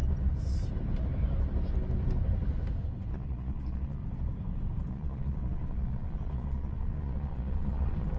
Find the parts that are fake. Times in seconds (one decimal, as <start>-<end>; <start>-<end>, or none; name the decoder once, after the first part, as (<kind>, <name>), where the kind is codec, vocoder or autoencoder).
3.1-4.0 (vocoder, Vocos); 4.9-8.2